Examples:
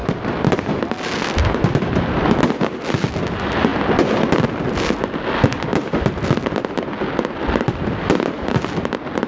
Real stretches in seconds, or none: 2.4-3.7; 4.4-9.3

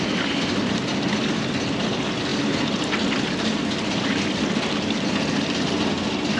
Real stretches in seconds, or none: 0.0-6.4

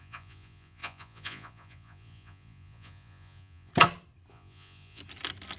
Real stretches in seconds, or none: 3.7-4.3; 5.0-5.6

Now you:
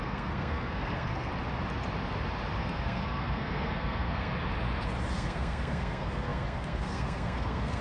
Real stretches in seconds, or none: 1.3-2.6; 4.3-5.1